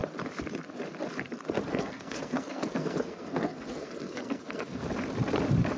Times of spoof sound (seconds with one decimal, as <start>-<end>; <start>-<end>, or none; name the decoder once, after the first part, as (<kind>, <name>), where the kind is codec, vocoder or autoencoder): 1.7-4.8 (codec, SNAC)